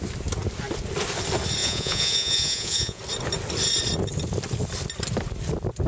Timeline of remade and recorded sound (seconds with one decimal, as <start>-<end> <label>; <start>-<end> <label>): 0.0-1.6 recorded; 1.6-3.0 remade; 3.0-5.9 recorded